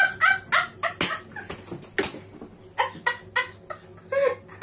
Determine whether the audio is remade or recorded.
recorded